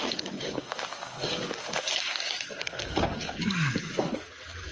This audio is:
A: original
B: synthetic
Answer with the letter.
B